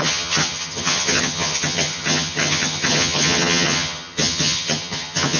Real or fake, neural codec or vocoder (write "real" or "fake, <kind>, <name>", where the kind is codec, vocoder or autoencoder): fake, vocoder, HiFi-GAN